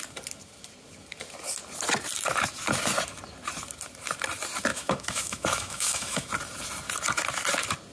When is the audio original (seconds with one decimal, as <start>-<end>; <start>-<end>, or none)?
0.0-4.7; 6.3-7.9